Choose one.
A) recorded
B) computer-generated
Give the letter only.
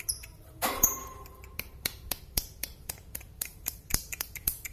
B